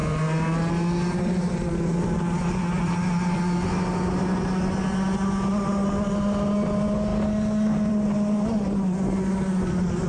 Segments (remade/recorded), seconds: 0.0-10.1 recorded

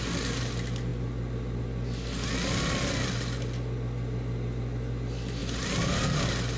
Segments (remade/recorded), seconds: 0.0-6.6 recorded